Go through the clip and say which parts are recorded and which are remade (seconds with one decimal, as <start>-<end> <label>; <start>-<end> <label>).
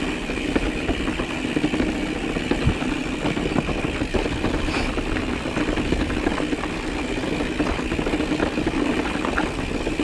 0.0-10.0 recorded